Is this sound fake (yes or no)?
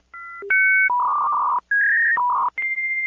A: no